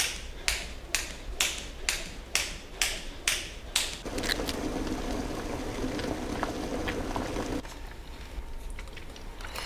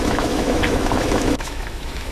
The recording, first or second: first